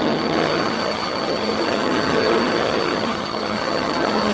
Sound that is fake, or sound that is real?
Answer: fake